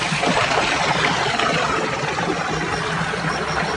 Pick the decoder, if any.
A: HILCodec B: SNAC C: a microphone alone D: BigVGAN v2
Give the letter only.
C